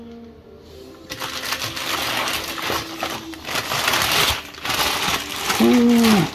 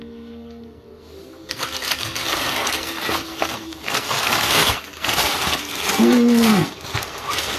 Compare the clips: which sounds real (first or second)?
first